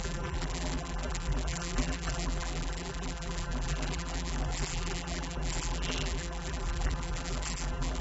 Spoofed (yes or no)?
yes